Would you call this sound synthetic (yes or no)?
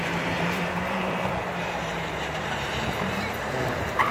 yes